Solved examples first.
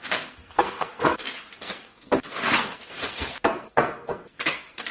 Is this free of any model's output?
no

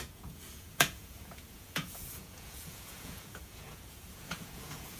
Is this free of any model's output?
no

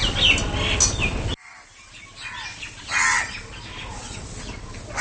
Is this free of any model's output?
yes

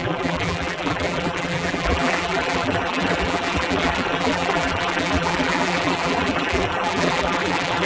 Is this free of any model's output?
no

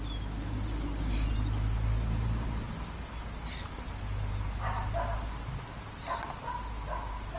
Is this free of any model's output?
yes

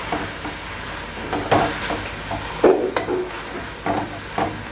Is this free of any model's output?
yes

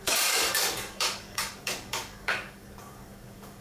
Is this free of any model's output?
no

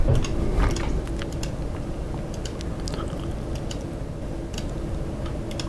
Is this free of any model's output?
yes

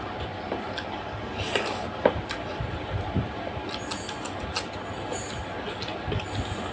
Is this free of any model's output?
yes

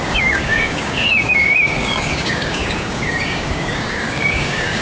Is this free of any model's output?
no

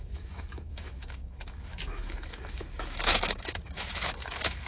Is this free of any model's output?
no